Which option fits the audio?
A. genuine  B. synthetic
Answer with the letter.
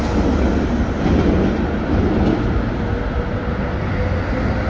A